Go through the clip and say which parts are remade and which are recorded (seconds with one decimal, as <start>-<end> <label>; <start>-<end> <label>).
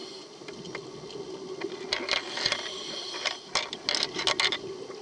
0.0-5.0 recorded